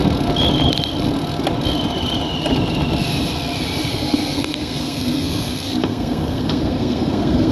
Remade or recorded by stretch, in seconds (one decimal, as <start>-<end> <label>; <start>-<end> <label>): 0.0-3.9 recorded; 3.9-7.5 remade